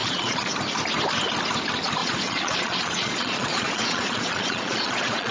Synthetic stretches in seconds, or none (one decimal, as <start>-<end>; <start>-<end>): 0.0-0.5; 2.0-5.3